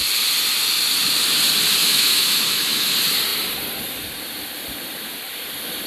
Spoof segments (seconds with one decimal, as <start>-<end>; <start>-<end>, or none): 1.8-2.9